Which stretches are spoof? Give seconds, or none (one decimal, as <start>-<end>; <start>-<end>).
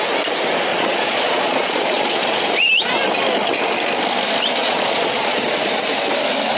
0.7-2.2; 4.6-5.7